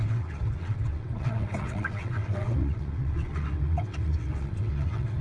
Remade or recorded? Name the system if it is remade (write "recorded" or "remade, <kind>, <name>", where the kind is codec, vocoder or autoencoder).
remade, vocoder, WaveNeXt